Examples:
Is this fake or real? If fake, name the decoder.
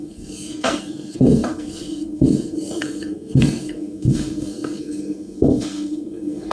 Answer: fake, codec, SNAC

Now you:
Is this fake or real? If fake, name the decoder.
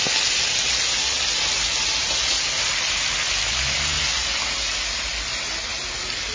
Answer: real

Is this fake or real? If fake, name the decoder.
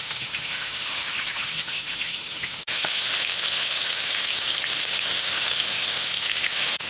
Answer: fake, autoencoder, DAC-VAE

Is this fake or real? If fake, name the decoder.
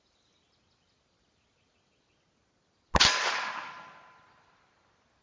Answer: real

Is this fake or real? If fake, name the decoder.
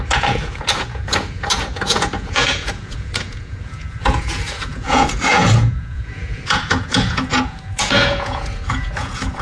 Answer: fake, vocoder, Vocos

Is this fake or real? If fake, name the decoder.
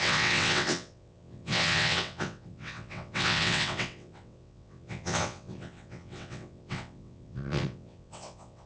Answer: fake, vocoder, WaveNeXt